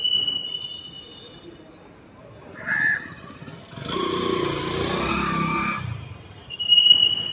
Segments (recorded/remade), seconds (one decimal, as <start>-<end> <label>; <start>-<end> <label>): 0.0-7.3 recorded